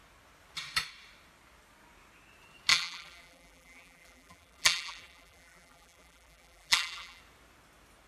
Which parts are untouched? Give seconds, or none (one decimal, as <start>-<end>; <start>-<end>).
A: 0.0-2.7; 7.2-8.1